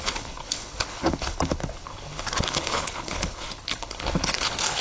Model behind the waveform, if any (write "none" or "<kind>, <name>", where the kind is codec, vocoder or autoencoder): codec, HILCodec